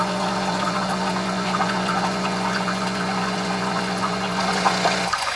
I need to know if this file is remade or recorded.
remade